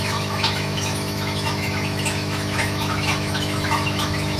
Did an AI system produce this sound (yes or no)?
yes